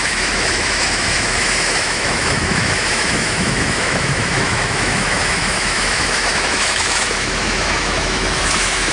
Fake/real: fake